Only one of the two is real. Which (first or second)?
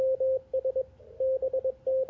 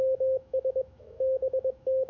first